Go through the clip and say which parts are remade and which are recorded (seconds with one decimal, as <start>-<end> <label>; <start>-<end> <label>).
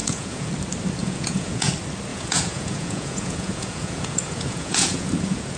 0.0-0.5 remade; 0.5-1.0 recorded; 1.0-1.7 remade; 1.7-2.1 recorded; 2.1-5.6 remade